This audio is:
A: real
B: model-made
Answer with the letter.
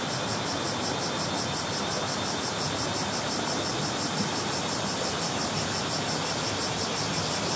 A